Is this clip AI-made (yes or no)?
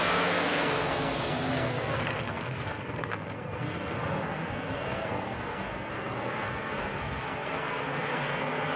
yes